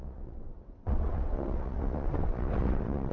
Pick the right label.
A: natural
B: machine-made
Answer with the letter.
B